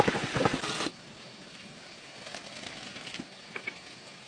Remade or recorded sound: recorded